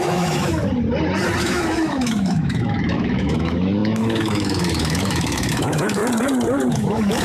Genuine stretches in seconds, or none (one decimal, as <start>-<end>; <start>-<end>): 0.6-1.4; 6.0-6.7